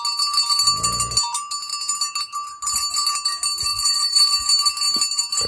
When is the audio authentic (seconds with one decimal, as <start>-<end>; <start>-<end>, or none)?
0.0-3.7; 4.3-5.5

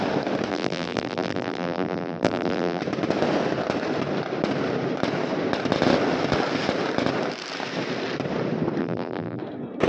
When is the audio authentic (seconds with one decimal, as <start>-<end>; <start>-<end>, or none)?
0.0-0.5; 2.8-8.8; 9.4-9.9

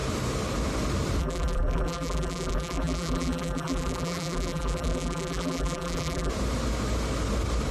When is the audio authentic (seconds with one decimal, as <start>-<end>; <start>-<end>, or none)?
0.0-1.2; 6.3-7.7

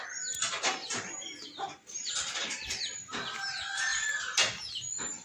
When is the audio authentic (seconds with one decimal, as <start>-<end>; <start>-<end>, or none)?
0.0-0.8; 2.6-5.2

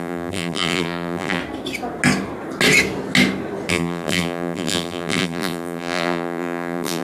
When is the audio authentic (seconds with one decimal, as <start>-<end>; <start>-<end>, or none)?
1.4-3.7

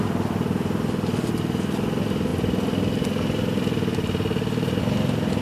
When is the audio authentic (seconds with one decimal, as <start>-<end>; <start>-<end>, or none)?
0.0-5.4